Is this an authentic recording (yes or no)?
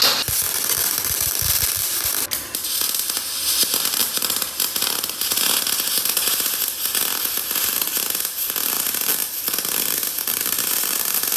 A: yes